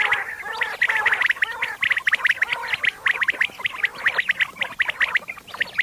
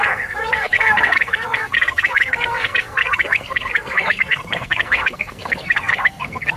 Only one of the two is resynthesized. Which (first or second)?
second